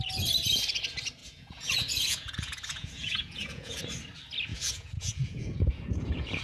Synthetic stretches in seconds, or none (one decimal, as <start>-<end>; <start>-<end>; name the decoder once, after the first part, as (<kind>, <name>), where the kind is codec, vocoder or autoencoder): 1.2-3.8 (vocoder, Vocos); 4.5-6.4